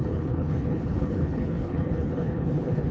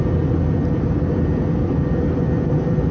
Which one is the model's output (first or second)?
first